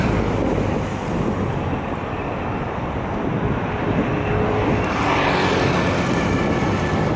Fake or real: real